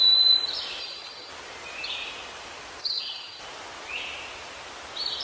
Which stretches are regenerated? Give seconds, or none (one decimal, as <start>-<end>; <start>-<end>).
0.8-1.3; 2.8-3.4